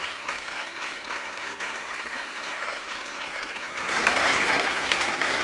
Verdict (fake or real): fake